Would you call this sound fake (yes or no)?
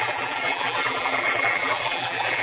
yes